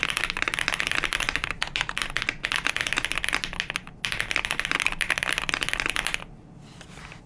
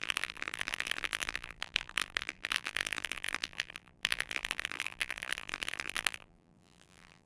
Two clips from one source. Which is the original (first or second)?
first